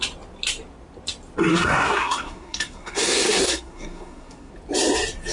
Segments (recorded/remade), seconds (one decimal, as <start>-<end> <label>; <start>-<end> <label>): 0.0-1.5 recorded; 1.5-4.5 remade; 4.5-5.3 recorded